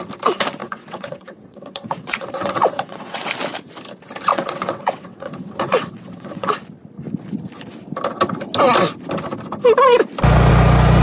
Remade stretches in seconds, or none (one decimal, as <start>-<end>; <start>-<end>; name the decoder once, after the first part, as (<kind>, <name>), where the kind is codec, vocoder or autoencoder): 0.6-3.3 (vocoder, WaveNeXt); 4.3-6.5